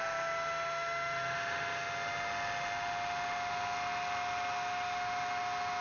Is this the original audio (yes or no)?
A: no